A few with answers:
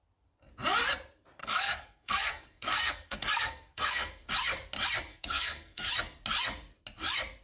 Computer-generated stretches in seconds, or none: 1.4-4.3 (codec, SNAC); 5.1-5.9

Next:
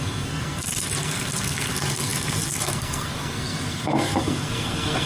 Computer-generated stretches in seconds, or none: 0.0-5.1 (codec, SNAC)

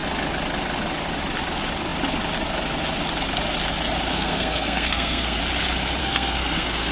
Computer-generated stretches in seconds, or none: 4.1-5.4 (codec, SNAC); 6.0-6.9

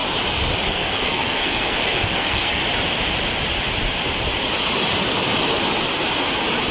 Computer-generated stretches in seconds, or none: 0.7-2.6 (codec, SNAC)